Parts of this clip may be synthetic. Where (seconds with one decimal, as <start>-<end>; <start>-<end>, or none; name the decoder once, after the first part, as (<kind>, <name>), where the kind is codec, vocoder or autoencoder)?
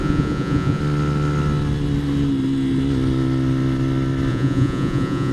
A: 0.0-0.8 (vocoder, Vocos); 4.3-5.3